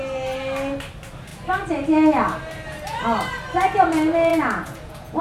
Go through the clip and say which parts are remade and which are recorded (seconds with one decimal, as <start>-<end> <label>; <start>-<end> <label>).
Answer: 0.0-4.3 recorded; 4.3-5.2 remade